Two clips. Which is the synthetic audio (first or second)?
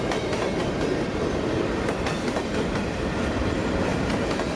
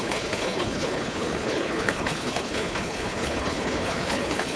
second